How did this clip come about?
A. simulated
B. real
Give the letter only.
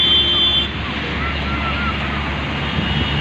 B